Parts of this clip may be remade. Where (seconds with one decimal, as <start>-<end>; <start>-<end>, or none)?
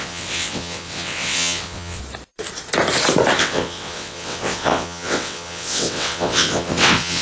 0.0-2.0; 3.4-7.2